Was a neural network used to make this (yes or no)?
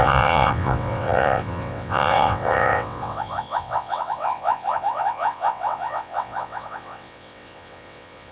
yes